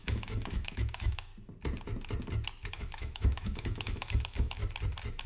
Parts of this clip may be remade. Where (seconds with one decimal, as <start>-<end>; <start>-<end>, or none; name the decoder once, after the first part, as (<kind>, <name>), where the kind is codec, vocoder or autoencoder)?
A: 0.0-1.3 (autoencoder, DAC-VAE); 2.7-4.6

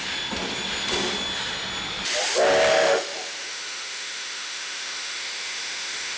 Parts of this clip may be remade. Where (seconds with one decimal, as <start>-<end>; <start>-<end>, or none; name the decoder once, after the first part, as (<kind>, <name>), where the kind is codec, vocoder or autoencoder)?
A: 2.7-6.2 (autoencoder, DAC-VAE)